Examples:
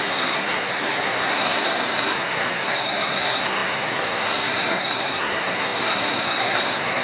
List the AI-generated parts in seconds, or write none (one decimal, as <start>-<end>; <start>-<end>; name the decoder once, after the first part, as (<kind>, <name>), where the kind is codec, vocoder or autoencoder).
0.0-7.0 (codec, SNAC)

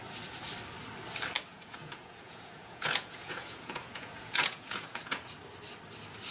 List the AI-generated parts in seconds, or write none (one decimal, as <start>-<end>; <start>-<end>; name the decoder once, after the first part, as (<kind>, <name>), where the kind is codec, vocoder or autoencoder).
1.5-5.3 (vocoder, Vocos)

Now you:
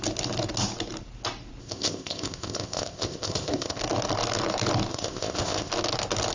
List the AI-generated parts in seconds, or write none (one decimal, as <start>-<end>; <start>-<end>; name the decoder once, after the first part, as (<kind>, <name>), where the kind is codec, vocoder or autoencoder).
1.6-3.8 (codec, ZipCodec); 4.9-5.7